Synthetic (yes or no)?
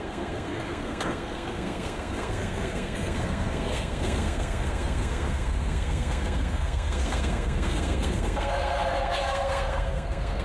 yes